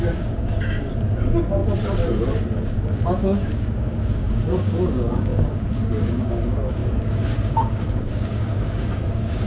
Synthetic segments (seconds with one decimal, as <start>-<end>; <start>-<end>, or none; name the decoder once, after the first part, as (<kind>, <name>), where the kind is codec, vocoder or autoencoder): 0.0-1.6 (codec, DAC); 2.5-9.5